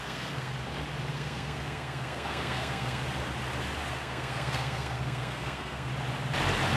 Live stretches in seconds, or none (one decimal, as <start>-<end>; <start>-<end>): 0.5-1.1; 3.0-3.9; 5.9-6.8